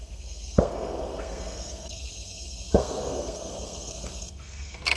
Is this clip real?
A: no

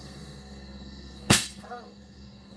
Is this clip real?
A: no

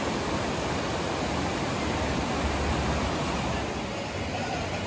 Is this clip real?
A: yes